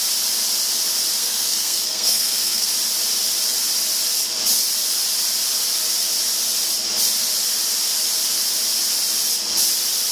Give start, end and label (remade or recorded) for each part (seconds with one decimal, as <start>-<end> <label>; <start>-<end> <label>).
0.0-1.2 recorded; 1.2-2.7 remade; 2.7-10.1 recorded